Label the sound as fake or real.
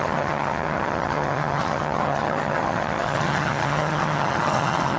fake